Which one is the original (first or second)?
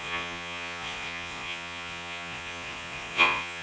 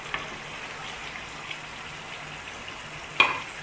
second